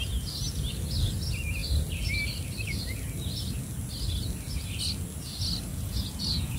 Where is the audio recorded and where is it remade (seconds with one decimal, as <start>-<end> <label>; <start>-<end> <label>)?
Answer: 0.0-5.7 recorded; 5.7-6.6 remade